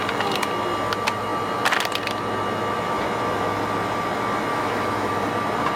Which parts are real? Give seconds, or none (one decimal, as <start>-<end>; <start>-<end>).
0.0-4.5; 5.1-5.8